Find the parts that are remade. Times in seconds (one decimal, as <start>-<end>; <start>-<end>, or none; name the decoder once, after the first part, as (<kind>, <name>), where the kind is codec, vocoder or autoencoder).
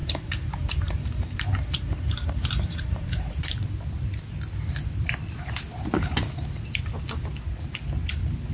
0.0-3.7 (vocoder, BigVGAN v2)